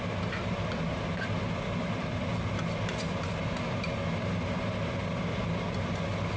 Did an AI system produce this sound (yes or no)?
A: no